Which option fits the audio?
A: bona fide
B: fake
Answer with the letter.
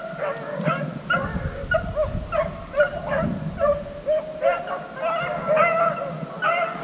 A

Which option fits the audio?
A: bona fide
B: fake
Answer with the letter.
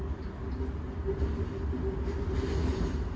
A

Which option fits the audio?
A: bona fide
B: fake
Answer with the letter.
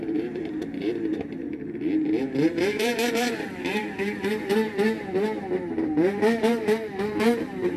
B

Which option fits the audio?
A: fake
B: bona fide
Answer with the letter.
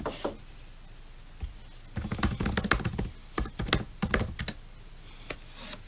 B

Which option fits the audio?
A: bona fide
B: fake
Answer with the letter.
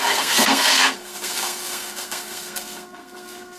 B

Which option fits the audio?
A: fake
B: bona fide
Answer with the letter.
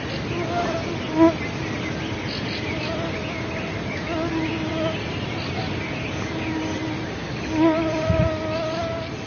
B